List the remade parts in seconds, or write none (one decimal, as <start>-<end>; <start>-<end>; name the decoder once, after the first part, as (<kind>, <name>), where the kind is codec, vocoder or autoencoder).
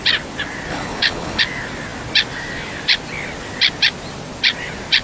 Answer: 0.7-1.4 (codec, HILCodec)